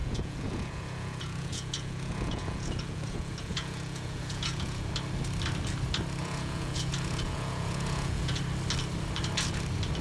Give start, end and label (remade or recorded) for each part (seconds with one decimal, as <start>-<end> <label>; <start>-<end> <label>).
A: 0.0-4.9 remade; 4.9-6.2 recorded; 6.2-8.4 remade; 8.4-10.0 recorded

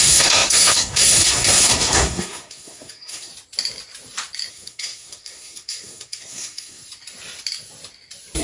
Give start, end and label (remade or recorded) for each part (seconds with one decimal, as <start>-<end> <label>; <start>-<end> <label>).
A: 0.0-3.3 remade; 3.3-4.5 recorded; 4.5-6.8 remade; 6.8-8.4 recorded

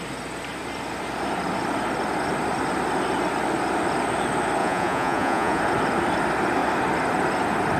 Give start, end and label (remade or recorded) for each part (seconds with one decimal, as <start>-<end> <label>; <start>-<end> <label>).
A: 0.0-4.6 recorded; 4.6-5.6 remade; 5.6-7.8 recorded